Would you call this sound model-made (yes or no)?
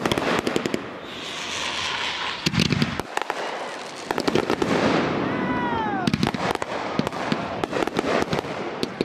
no